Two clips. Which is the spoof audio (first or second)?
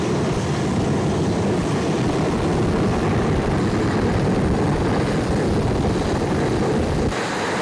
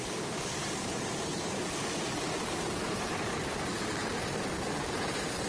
second